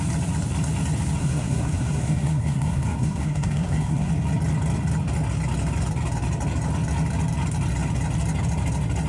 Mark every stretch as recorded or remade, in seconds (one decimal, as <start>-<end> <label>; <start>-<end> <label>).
0.0-1.2 recorded; 1.2-4.1 remade; 4.1-9.1 recorded